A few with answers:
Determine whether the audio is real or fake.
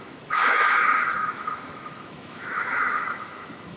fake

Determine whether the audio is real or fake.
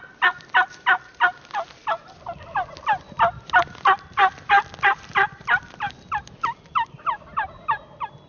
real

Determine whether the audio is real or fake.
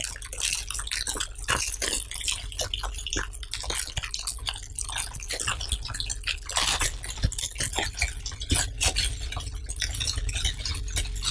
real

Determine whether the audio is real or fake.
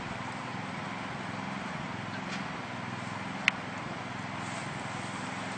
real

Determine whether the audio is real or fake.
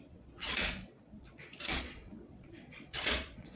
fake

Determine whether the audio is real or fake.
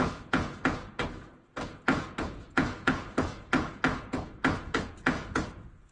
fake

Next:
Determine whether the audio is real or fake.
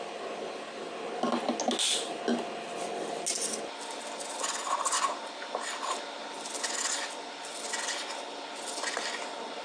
real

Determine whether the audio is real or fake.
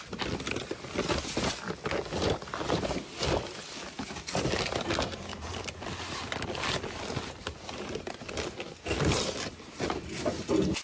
real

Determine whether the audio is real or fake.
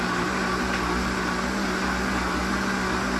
real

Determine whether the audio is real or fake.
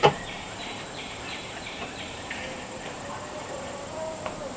fake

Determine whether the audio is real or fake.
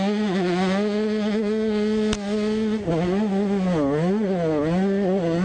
real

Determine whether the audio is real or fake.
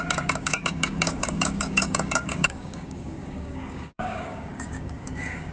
fake